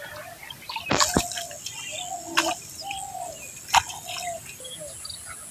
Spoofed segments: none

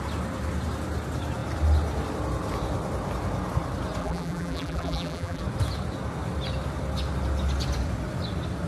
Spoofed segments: 4.0-5.4 (vocoder, BigVGAN v2)

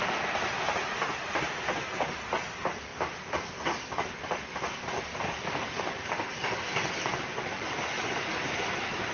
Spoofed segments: none

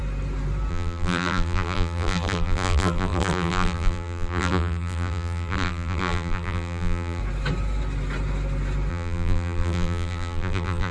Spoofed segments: 0.7-7.2 (vocoder, BigVGAN v2); 8.9-10.9

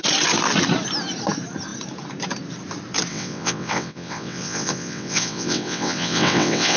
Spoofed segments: 3.1-6.8 (vocoder, WaveNeXt)

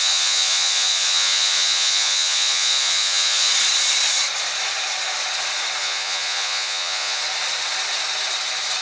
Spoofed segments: 0.0-3.5 (vocoder, Vocos); 5.8-7.2

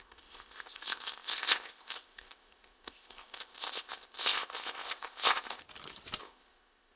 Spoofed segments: 0.0-5.6 (codec, ZipCodec); 6.2-7.0

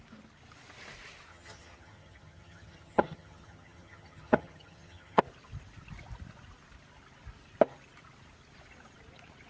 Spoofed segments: 1.3-5.2 (vocoder, HiFi-GAN)